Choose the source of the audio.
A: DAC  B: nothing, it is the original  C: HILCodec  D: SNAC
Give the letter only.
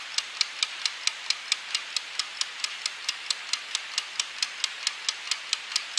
B